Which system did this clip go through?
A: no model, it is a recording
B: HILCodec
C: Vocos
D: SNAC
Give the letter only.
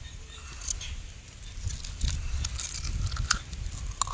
A